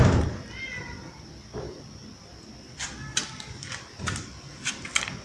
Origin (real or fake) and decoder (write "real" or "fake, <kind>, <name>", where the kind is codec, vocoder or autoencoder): real